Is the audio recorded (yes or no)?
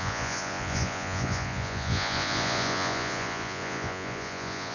no